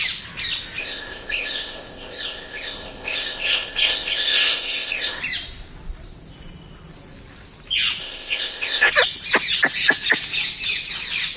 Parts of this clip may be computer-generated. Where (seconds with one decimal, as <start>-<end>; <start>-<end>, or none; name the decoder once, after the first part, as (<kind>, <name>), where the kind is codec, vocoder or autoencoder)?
0.8-5.2 (codec, ZipCodec); 8.0-8.9